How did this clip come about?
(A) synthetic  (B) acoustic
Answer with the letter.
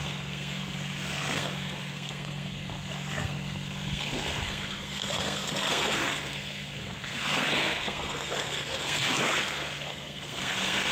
A